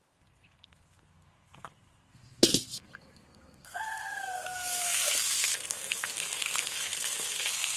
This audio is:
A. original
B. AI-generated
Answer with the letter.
B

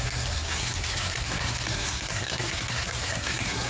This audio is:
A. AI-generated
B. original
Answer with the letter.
A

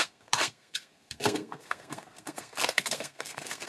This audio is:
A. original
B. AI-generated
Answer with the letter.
B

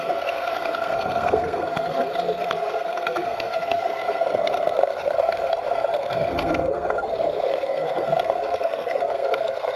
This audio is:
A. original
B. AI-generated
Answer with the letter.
B